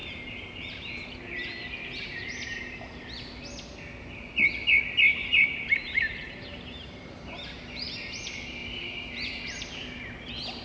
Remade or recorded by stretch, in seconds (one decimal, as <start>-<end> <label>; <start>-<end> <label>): 0.0-2.9 remade; 2.9-5.1 recorded; 5.1-7.3 remade; 7.3-8.6 recorded; 8.6-10.0 remade; 10.0-10.6 recorded